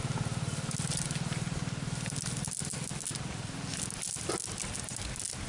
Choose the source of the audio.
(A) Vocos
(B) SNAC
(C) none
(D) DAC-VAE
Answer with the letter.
C